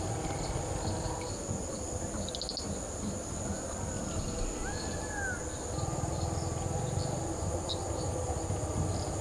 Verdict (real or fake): real